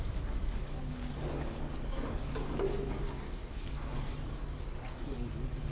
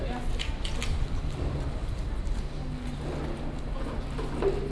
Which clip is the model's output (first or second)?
first